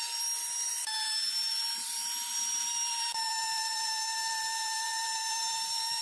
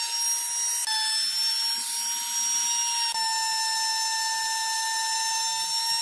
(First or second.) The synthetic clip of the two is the first